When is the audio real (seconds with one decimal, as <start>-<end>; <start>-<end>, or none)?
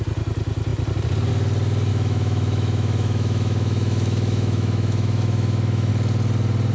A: 0.0-1.9; 5.9-6.7